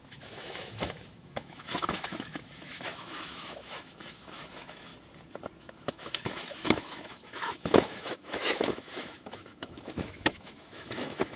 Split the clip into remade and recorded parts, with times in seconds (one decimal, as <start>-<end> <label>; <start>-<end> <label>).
0.0-4.9 remade; 4.9-5.6 recorded; 5.6-11.4 remade